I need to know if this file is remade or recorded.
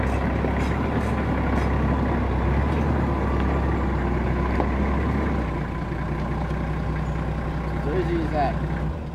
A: recorded